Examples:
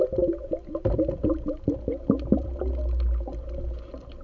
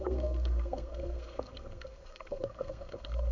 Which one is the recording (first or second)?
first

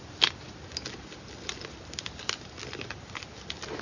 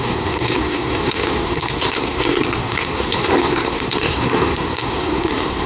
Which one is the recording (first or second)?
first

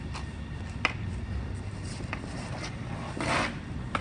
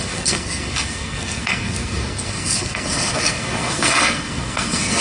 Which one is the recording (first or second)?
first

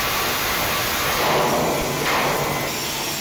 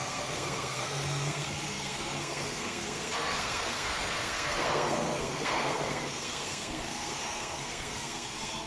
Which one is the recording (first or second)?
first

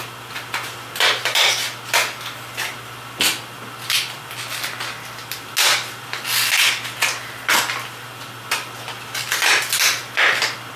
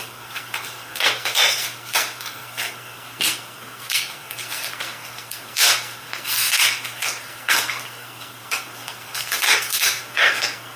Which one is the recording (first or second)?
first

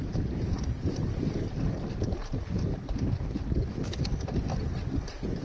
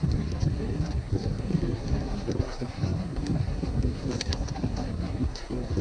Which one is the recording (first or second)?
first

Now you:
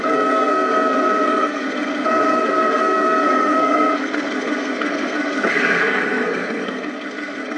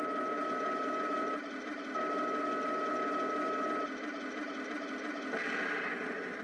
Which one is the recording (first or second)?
second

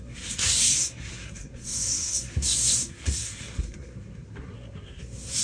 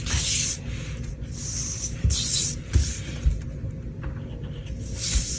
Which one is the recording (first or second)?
second